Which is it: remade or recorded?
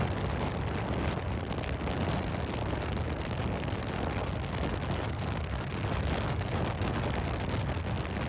recorded